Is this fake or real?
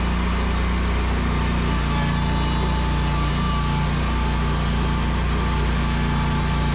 real